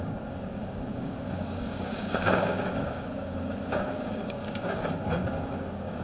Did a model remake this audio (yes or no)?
yes